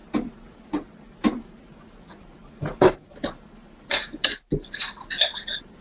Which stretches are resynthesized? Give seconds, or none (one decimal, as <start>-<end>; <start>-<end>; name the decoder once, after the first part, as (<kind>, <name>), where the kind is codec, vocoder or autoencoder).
none